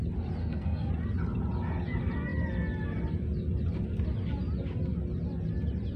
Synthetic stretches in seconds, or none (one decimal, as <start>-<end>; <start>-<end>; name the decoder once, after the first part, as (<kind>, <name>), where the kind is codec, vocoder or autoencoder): 0.4-0.9 (codec, SNAC)